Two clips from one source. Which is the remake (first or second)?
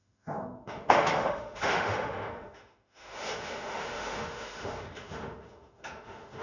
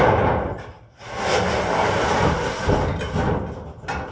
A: first